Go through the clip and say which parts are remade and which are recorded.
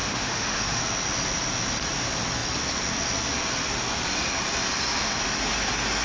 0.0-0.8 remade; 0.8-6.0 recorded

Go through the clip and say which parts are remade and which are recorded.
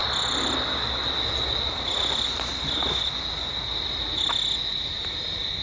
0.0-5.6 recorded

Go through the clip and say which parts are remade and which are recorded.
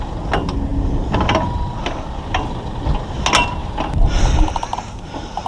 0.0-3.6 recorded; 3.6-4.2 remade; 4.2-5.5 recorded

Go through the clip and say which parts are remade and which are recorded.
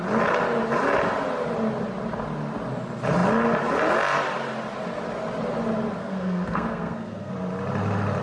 0.0-6.0 recorded; 6.0-7.3 remade; 7.3-8.2 recorded